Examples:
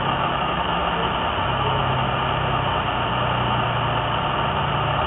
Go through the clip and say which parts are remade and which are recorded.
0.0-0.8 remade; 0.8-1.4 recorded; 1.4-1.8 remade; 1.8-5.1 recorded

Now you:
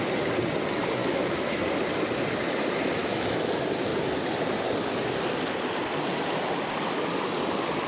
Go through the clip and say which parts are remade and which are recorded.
0.0-1.0 recorded; 1.0-1.6 remade; 1.6-3.0 recorded; 3.0-3.5 remade; 3.5-7.9 recorded

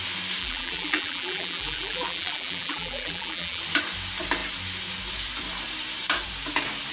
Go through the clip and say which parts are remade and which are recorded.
0.0-0.4 recorded; 0.4-3.6 remade; 3.6-6.9 recorded

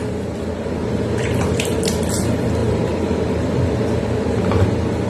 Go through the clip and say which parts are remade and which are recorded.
0.0-1.7 remade; 1.7-2.2 recorded; 2.2-5.1 remade

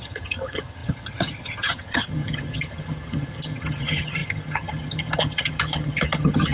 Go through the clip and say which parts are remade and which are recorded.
0.0-6.5 remade